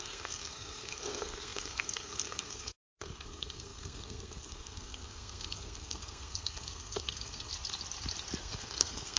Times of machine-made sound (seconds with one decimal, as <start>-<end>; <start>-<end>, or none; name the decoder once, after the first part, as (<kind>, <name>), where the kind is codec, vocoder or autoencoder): 0.0-7.5 (codec, SNAC); 8.4-9.2